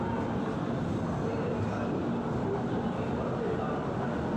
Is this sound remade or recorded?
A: recorded